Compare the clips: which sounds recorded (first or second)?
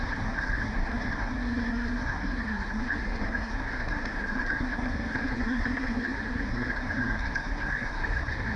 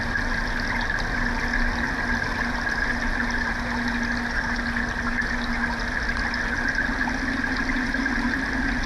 second